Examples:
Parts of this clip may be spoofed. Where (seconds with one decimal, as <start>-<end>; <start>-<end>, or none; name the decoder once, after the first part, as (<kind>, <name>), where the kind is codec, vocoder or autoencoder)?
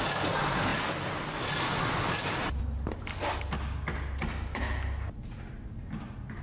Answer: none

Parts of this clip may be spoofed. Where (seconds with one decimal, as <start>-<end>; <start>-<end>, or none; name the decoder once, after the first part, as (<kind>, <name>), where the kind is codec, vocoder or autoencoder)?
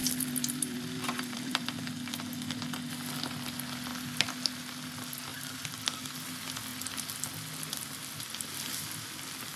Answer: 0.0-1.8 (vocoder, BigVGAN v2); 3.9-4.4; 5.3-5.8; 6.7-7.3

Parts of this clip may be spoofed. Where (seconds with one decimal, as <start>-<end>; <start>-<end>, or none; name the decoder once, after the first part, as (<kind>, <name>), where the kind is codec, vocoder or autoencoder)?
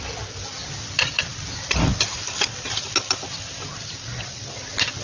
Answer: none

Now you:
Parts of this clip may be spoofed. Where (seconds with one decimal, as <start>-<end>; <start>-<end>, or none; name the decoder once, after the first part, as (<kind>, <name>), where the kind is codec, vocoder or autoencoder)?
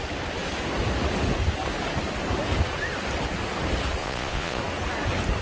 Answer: 4.0-4.6 (vocoder, Vocos)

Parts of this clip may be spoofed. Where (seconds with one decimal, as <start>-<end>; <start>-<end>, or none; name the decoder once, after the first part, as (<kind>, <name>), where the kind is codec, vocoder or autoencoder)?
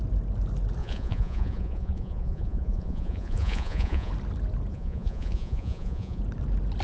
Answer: 0.8-4.1 (vocoder, Vocos); 4.7-6.2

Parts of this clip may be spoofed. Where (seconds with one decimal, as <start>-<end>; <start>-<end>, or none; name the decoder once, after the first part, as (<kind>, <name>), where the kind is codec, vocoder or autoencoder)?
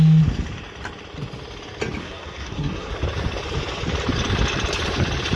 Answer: 2.0-2.9 (codec, SNAC)